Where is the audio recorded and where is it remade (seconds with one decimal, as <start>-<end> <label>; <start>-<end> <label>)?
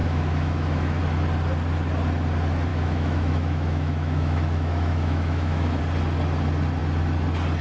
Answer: 0.0-1.0 remade; 1.0-2.7 recorded; 2.7-5.8 remade; 5.8-7.6 recorded